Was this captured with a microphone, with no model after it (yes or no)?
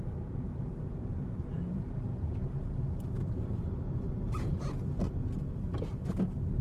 yes